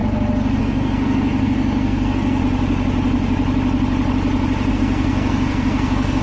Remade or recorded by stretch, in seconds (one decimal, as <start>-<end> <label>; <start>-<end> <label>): 0.0-0.6 recorded; 0.6-2.4 remade; 2.4-4.7 recorded; 4.7-6.2 remade